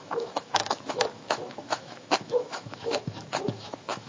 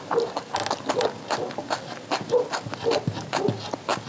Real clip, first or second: second